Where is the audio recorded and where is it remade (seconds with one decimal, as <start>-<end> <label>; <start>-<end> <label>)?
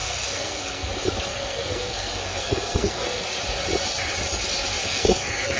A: 0.0-0.9 remade; 0.9-1.3 recorded; 1.3-3.2 remade; 3.2-4.8 recorded; 4.8-5.6 remade